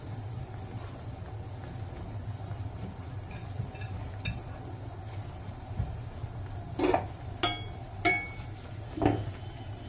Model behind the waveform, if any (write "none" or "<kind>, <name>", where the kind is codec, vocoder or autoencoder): none